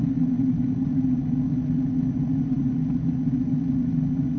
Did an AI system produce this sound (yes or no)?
no